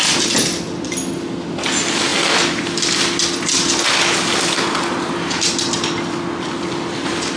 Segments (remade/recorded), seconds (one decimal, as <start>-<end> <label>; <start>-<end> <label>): 0.0-7.4 recorded